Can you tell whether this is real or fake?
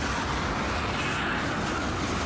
real